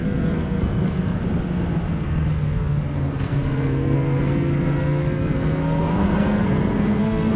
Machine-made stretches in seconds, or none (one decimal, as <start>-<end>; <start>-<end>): 0.0-1.2; 1.9-7.4